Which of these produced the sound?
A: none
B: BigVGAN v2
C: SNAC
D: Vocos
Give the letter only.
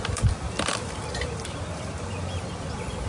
B